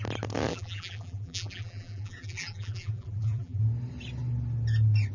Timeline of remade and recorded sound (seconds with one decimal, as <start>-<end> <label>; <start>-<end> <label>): 0.0-0.5 recorded; 0.5-3.6 remade; 3.6-5.1 recorded